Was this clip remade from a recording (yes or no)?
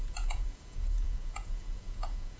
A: yes